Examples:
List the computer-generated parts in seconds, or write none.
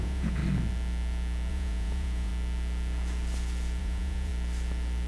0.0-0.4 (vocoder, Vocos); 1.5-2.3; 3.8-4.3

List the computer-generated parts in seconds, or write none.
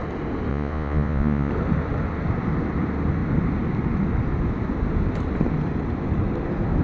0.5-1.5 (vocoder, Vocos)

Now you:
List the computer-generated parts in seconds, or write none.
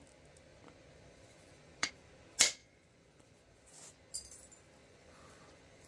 0.5-1.9 (vocoder, Vocos); 2.6-4.1; 4.8-5.9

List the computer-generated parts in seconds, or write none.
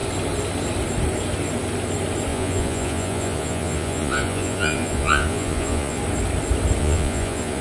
2.3-6.0 (vocoder, Vocos); 6.8-7.6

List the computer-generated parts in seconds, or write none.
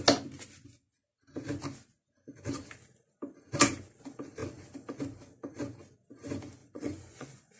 6.6-7.6 (vocoder, Vocos)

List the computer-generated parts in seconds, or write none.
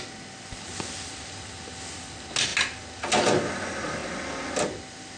none